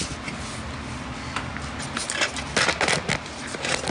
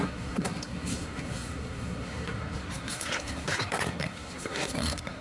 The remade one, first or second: second